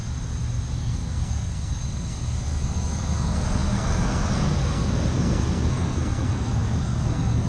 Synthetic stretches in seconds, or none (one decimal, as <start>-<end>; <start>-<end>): 0.8-7.5